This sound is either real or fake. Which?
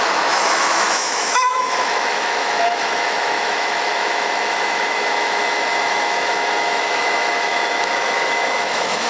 fake